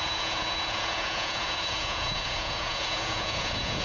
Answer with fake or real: fake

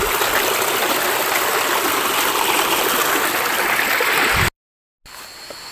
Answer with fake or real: real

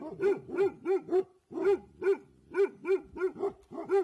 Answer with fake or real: real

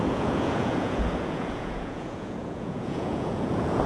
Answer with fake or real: fake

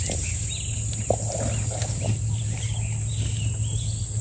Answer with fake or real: real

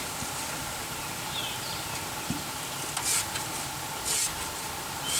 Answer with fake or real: real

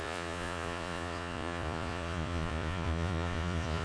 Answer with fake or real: fake